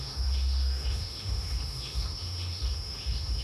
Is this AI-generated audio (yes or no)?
yes